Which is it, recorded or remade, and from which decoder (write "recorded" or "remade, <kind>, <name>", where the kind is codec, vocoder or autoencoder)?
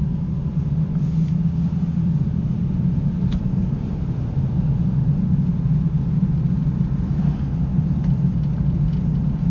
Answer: recorded